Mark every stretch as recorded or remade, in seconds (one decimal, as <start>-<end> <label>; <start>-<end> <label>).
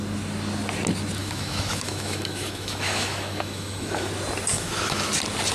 0.0-1.2 recorded; 1.2-4.1 remade; 4.1-4.5 recorded; 4.5-5.1 remade; 5.1-5.5 recorded